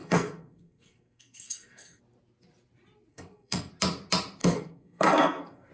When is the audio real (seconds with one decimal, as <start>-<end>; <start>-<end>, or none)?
2.0-3.1; 3.7-4.4